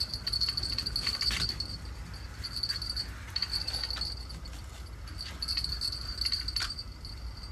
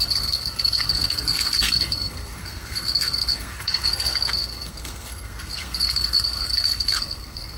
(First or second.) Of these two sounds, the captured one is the first